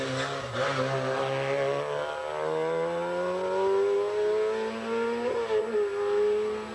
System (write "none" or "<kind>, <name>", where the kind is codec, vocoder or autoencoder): none